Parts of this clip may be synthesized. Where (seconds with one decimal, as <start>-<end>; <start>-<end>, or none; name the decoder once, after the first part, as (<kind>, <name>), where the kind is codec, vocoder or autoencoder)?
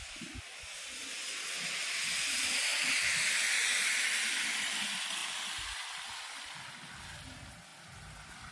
none